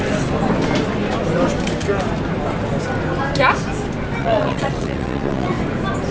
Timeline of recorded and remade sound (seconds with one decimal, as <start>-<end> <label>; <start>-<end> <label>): 0.0-4.2 recorded; 4.2-5.5 remade; 5.5-6.1 recorded

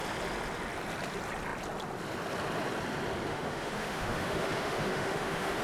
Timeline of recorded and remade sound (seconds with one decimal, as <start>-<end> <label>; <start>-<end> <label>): 0.0-3.3 recorded; 3.3-5.6 remade

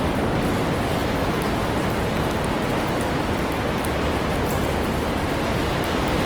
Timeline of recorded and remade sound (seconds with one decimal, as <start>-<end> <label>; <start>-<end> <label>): 0.0-1.0 recorded; 1.0-1.6 remade; 1.6-6.3 recorded

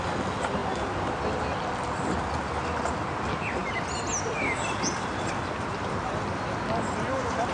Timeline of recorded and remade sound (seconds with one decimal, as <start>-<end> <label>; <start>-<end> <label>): 0.0-7.5 recorded

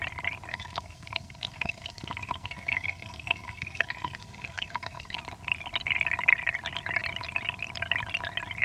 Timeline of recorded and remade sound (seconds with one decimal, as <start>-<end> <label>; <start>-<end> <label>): 0.0-0.5 recorded; 0.5-5.2 remade; 5.2-8.6 recorded

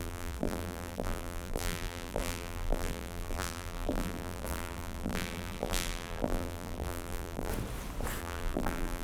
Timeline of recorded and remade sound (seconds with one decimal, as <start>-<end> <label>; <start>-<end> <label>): 0.0-7.5 remade; 7.5-8.2 recorded; 8.2-9.0 remade